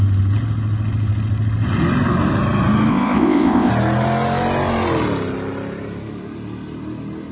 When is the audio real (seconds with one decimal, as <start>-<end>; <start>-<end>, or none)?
0.0-2.9; 3.7-7.3